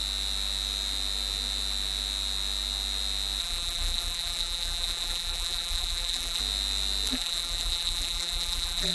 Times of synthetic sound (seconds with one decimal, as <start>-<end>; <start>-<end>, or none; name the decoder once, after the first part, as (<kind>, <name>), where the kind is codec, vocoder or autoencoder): 3.4-6.4 (vocoder, BigVGAN v2); 7.1-8.9